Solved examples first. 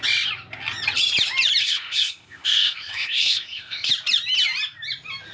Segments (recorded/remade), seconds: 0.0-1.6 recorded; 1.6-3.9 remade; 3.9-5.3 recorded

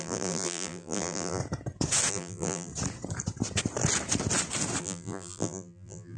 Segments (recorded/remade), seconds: 0.0-1.4 remade; 1.4-2.1 recorded; 2.1-2.7 remade; 2.7-4.8 recorded; 4.8-6.2 remade

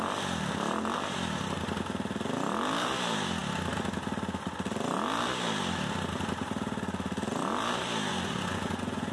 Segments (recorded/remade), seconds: 0.0-8.1 recorded; 8.1-9.1 remade

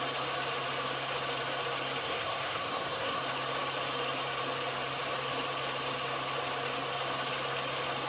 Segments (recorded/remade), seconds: 0.0-2.0 recorded; 2.0-3.2 remade; 3.2-8.1 recorded